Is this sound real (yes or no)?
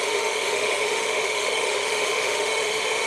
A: no